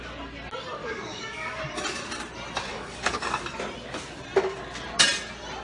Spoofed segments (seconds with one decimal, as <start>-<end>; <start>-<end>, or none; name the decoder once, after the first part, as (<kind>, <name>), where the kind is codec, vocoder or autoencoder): 0.8-1.6 (codec, DAC); 2.7-3.4